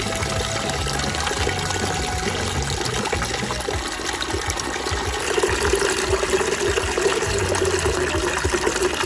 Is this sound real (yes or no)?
yes